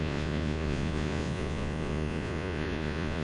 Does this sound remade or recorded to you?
remade